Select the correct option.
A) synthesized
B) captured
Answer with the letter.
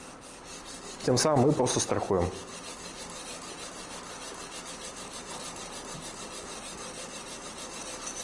B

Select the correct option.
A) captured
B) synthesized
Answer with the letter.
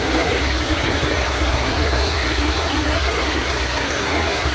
B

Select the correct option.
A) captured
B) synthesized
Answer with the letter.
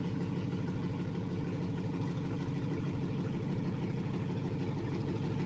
B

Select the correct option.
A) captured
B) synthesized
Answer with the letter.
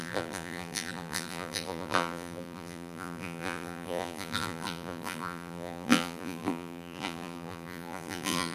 B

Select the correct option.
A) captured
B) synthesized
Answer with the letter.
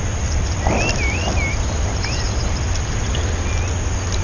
A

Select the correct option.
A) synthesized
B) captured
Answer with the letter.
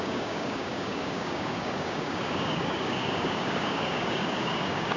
A